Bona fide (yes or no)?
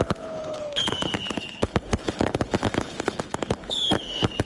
no